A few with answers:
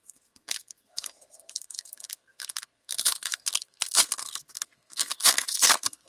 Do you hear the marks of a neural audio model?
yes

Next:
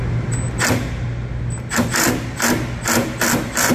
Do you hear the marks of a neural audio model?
no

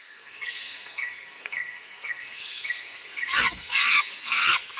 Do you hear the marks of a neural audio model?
yes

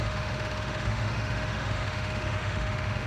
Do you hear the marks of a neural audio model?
yes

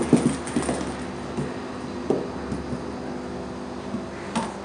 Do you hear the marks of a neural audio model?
no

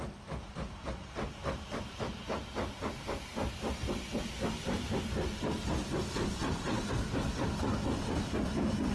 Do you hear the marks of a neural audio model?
no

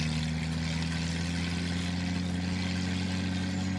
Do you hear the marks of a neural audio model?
no